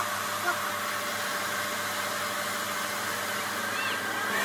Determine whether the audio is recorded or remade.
recorded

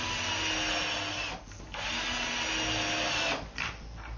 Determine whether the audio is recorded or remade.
recorded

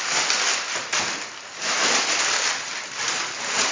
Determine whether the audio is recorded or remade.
recorded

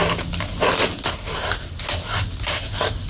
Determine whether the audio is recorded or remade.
recorded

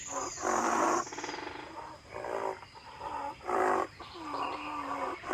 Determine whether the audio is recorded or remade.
recorded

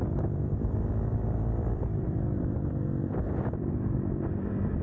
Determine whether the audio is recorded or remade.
remade